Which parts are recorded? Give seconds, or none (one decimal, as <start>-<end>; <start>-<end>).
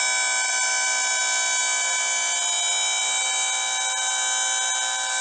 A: 0.0-5.2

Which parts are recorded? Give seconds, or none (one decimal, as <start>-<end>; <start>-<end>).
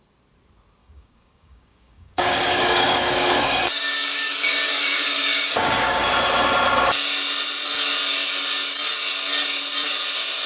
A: 0.0-0.8; 6.1-10.5